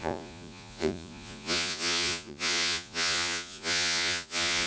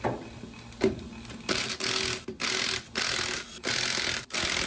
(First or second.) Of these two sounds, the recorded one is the second